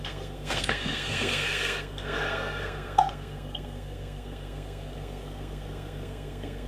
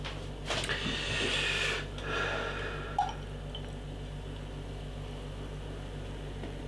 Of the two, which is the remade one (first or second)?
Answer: first